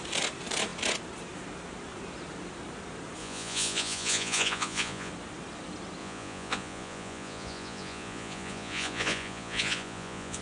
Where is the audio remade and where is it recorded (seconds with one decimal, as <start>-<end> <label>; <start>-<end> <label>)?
0.0-3.2 recorded; 3.2-5.1 remade; 5.1-6.0 recorded; 6.0-10.4 remade